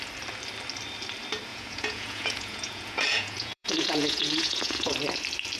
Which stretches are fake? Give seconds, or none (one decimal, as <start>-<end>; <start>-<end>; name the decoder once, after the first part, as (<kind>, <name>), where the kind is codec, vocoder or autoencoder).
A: 1.5-4.9 (vocoder, Vocos)